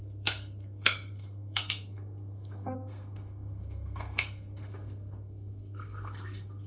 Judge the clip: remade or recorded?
remade